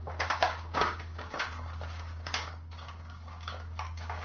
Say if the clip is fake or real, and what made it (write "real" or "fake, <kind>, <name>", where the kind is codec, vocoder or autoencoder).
fake, codec, DAC